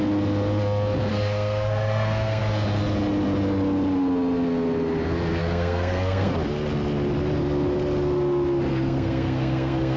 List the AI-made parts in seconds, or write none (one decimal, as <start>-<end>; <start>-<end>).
1.1-2.4; 5.4-6.3; 8.7-10.0